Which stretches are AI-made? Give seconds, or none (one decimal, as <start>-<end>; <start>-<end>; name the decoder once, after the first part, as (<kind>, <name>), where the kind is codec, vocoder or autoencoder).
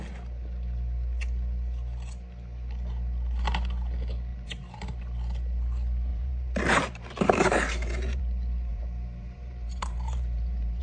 4.3-5.0 (vocoder, BigVGAN v2); 6.1-8.2; 8.7-10.8